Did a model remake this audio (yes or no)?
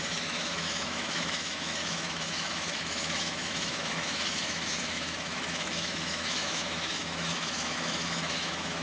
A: yes